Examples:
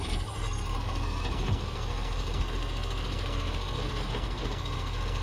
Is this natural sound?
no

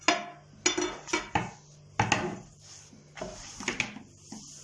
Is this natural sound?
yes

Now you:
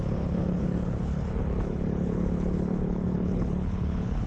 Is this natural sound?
no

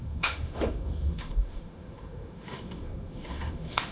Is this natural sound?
no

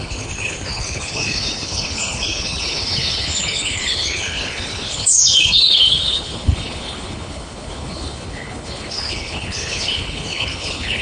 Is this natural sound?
no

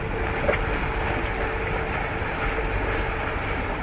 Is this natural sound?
yes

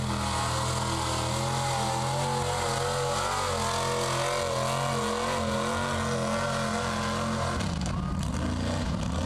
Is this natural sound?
yes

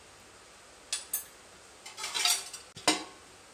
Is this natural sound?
yes